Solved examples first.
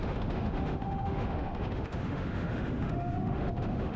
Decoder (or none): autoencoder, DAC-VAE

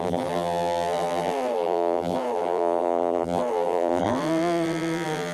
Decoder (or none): vocoder, BigVGAN v2